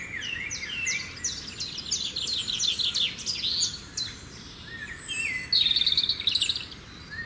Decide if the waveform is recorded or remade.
recorded